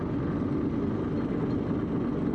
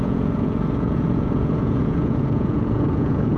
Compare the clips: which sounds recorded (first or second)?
first